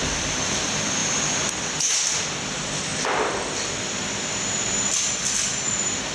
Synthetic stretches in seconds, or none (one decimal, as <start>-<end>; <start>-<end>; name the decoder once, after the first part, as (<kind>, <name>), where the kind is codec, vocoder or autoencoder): 0.0-6.1 (vocoder, BigVGAN v2)